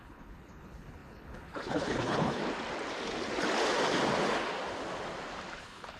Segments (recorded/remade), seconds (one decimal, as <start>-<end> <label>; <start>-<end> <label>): 0.0-2.4 remade; 2.4-5.6 recorded; 5.6-6.0 remade